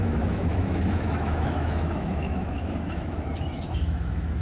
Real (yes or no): no